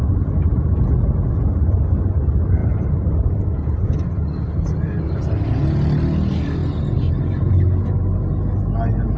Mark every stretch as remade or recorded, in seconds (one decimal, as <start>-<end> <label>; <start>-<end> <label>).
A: 0.0-2.6 recorded; 2.6-3.7 remade; 3.7-6.6 recorded; 6.6-7.5 remade; 7.5-9.2 recorded

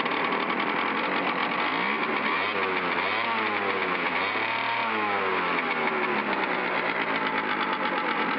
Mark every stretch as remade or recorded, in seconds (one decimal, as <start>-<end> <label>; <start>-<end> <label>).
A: 0.0-8.4 recorded

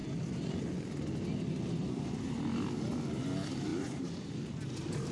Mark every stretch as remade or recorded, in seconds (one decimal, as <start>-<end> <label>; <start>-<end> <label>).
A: 0.0-3.7 recorded; 3.7-4.3 remade; 4.3-5.1 recorded

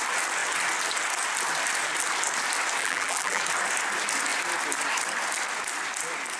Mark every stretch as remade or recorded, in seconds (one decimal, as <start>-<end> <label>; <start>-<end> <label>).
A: 0.0-2.8 recorded; 2.8-3.4 remade; 3.4-6.4 recorded

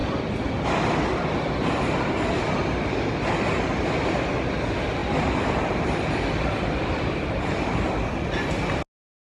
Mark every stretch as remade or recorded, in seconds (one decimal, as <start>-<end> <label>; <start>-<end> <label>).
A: 0.0-5.0 recorded; 5.0-8.1 remade; 8.1-9.2 recorded

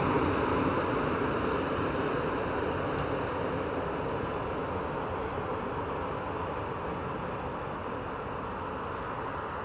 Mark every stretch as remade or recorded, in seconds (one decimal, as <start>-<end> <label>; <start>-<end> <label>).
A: 0.0-7.8 recorded; 7.8-8.5 remade; 8.5-9.6 recorded

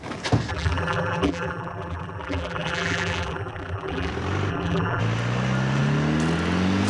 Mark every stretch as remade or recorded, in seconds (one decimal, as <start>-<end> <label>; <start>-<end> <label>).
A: 0.0-0.5 recorded; 0.5-4.1 remade; 4.1-4.5 recorded; 4.5-5.0 remade; 5.0-6.9 recorded